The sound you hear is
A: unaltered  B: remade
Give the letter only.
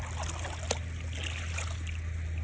A